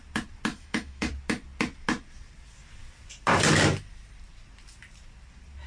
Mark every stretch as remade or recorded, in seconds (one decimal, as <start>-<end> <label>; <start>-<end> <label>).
0.0-0.5 recorded; 0.5-1.1 remade; 1.1-5.7 recorded